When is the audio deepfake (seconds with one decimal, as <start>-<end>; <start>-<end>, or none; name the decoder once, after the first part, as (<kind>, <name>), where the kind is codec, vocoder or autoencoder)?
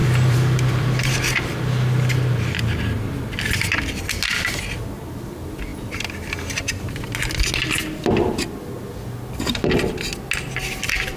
0.0-1.5 (vocoder, BigVGAN v2)